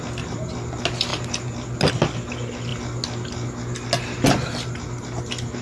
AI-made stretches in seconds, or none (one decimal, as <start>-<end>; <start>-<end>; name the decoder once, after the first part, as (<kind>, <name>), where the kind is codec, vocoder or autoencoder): none